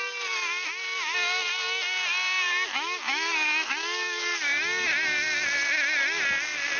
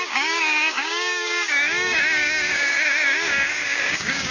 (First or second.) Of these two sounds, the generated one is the second